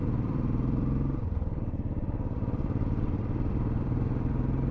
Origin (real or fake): fake